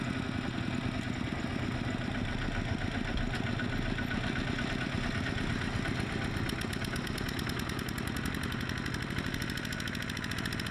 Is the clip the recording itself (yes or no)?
yes